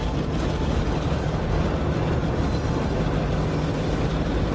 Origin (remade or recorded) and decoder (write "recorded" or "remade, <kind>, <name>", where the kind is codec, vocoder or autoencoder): recorded